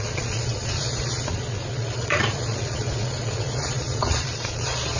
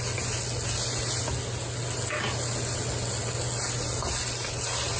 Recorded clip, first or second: second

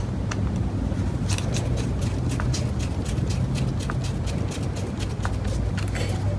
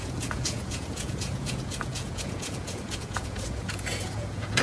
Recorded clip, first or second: first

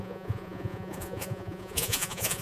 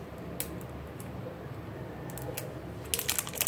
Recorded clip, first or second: second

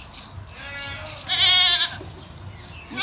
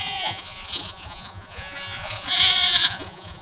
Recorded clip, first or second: first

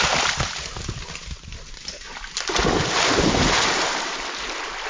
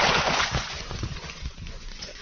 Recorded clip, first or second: first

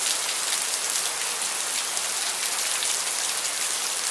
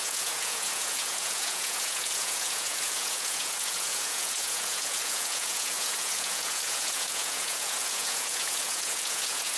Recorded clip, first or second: first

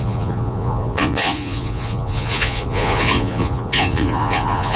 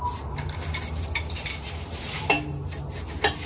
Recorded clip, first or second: second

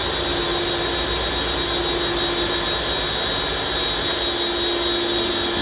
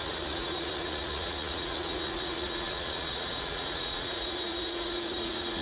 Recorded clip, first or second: first